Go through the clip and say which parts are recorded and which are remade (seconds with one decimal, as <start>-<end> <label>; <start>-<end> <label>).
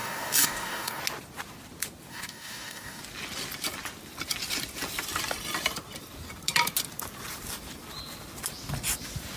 0.0-1.0 remade; 1.0-2.1 recorded; 2.1-3.0 remade; 3.0-9.4 recorded